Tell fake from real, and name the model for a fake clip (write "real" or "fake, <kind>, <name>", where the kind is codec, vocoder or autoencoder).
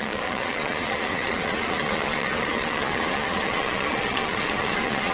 fake, vocoder, Vocos